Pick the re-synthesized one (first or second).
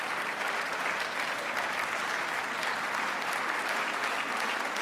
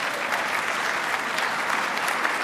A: second